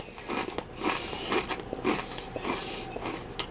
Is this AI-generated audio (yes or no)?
no